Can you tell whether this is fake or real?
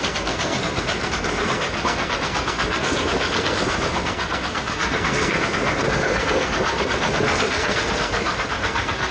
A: fake